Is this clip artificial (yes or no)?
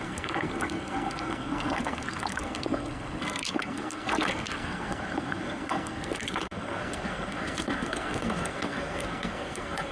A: yes